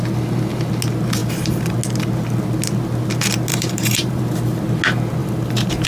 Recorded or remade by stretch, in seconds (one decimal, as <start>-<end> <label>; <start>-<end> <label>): 0.0-1.2 recorded; 1.2-1.8 remade; 1.8-3.5 recorded; 3.5-4.2 remade; 4.2-5.2 recorded; 5.2-5.9 remade